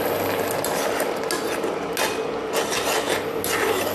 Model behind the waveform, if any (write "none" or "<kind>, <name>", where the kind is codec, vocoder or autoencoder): none